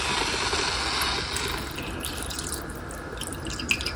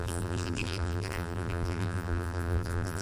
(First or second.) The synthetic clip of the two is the second